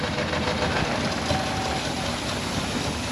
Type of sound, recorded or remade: recorded